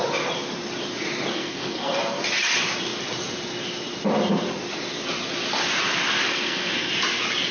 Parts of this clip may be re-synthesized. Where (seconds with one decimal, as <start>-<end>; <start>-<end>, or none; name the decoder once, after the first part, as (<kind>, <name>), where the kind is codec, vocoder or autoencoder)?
1.3-2.2 (codec, SNAC); 6.3-6.9